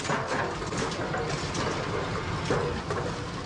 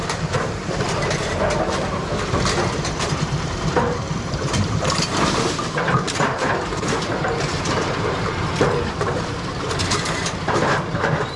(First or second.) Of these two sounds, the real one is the first